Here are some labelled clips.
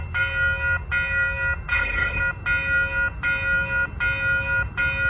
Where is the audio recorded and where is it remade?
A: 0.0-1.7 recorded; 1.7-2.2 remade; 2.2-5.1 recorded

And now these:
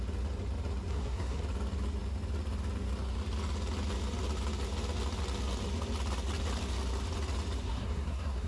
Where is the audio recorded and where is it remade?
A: 0.0-0.9 recorded; 0.9-1.4 remade; 1.4-7.7 recorded; 7.7-8.5 remade